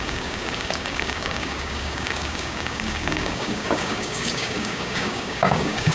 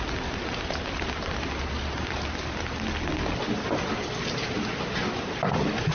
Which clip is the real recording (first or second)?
second